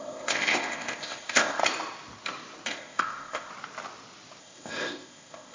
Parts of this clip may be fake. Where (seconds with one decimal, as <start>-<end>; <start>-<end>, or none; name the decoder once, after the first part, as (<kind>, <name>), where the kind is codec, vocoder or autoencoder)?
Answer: 0.0-1.6 (codec, ZipCodec); 2.7-3.5; 4.4-5.5